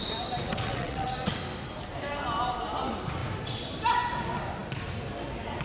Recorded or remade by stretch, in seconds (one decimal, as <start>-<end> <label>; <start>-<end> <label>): 0.0-0.5 recorded; 0.5-1.3 remade; 1.3-5.6 recorded